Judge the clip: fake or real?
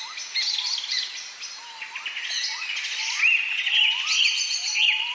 real